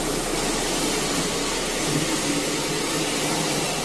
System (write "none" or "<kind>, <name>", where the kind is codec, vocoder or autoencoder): none